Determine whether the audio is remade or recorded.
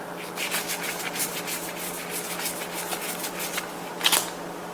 recorded